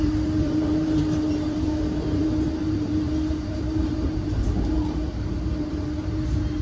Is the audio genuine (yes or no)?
no